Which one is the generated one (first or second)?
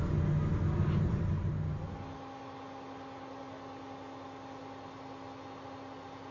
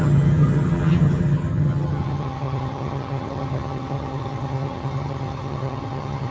second